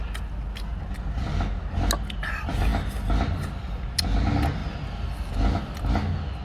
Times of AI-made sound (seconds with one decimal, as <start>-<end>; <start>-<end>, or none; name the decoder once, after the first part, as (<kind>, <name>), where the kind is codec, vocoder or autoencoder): none